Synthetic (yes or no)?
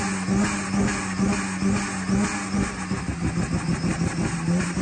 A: no